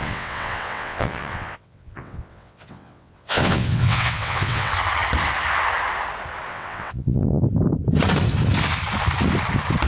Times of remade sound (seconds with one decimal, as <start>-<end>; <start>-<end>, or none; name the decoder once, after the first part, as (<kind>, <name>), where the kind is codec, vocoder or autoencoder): 0.0-4.7 (vocoder, WaveNeXt); 6.5-7.4